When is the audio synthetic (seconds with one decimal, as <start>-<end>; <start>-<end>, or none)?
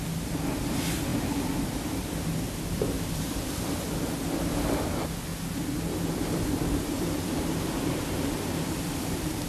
0.0-5.3; 6.1-9.5